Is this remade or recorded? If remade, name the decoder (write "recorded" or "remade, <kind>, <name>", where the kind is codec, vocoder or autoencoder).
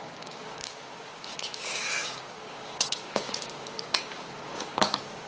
remade, codec, DAC